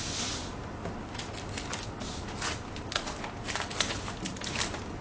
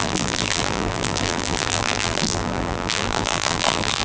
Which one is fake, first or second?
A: second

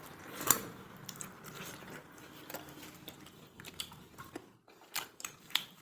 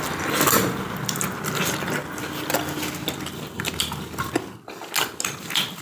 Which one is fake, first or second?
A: first